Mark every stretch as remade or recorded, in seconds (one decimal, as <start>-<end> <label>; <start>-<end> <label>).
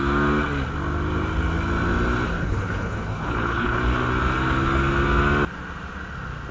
0.0-2.4 recorded; 2.4-3.8 remade; 3.8-6.5 recorded